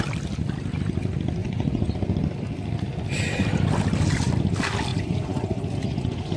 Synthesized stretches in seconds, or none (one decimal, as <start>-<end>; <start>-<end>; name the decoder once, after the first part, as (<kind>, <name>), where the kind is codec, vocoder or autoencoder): 1.4-1.9 (vocoder, Vocos); 4.9-6.4